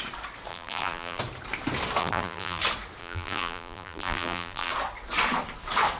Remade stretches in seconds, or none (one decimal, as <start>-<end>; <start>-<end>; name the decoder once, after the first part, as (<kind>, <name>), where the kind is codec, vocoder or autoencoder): 0.5-1.2 (vocoder, BigVGAN v2); 2.0-2.6; 3.0-4.7